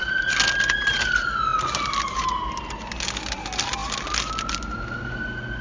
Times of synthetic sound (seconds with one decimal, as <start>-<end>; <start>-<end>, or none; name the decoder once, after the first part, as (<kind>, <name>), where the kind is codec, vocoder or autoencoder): none